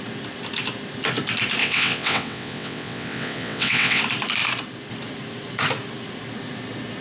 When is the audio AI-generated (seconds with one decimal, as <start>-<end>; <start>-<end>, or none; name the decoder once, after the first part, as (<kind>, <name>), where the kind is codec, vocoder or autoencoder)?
1.6-4.0 (vocoder, WaveNeXt)